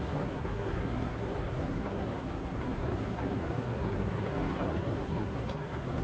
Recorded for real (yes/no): no